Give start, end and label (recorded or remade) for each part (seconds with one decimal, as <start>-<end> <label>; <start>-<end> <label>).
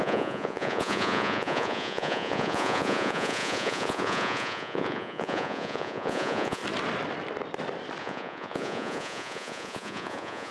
0.0-6.6 remade; 6.6-8.0 recorded; 8.0-10.5 remade